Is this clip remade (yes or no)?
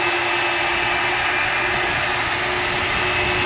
no